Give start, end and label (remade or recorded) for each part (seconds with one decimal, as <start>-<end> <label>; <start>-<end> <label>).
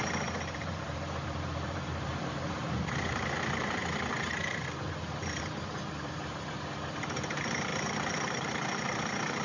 0.0-9.4 remade